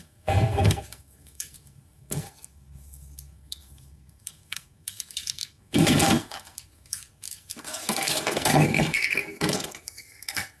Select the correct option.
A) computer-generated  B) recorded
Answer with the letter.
A